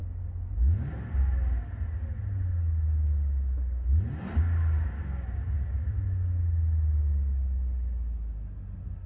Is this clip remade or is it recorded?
recorded